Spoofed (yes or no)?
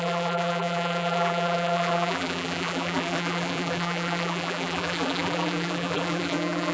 yes